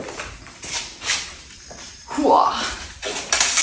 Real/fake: real